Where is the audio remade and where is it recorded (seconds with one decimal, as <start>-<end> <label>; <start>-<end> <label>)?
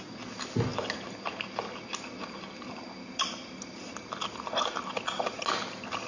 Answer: 0.0-6.1 recorded